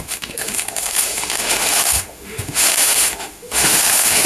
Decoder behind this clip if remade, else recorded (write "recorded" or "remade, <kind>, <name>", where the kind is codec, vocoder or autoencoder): remade, autoencoder, DAC-VAE